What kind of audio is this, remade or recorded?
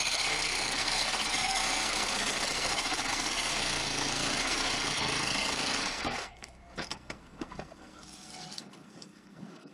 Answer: remade